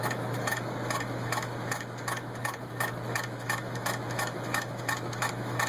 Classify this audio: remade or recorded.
remade